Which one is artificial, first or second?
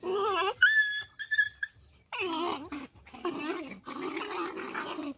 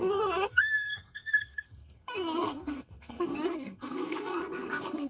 second